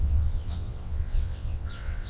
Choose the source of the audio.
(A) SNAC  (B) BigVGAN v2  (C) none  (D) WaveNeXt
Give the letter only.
D